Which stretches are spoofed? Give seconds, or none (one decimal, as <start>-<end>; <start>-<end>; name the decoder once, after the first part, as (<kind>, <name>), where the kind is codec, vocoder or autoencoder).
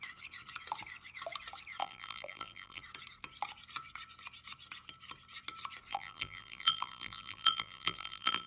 1.8-2.8 (vocoder, BigVGAN v2); 5.9-8.5